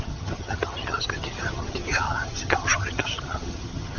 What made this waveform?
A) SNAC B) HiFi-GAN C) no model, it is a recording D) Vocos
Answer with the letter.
B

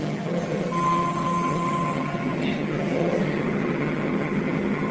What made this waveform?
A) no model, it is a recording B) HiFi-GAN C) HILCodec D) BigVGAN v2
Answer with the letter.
B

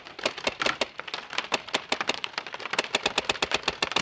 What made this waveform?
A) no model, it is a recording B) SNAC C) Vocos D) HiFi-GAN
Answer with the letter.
A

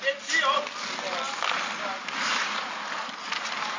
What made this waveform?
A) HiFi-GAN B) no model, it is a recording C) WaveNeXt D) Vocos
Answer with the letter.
B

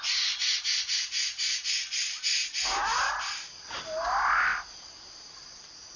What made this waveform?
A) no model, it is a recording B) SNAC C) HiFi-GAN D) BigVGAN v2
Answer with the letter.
A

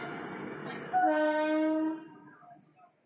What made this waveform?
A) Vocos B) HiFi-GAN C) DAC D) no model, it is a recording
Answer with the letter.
D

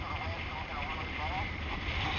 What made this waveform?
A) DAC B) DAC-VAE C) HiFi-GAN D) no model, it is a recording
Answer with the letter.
D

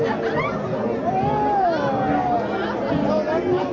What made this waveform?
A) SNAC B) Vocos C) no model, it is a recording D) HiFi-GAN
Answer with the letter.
C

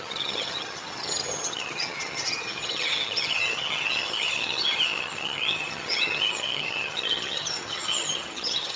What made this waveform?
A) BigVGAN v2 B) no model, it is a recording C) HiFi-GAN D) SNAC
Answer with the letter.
C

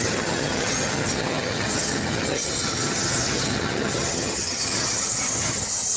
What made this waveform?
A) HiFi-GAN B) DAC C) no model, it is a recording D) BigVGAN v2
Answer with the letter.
A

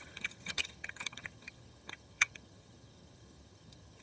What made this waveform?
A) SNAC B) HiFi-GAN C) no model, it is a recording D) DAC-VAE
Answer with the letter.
B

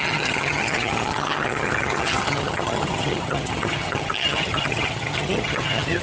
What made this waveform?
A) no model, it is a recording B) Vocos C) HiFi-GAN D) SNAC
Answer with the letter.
C